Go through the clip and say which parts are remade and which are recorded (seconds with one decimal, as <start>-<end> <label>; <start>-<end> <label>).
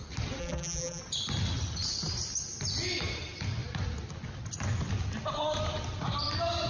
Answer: 0.0-0.4 recorded; 0.4-1.0 remade; 1.0-6.7 recorded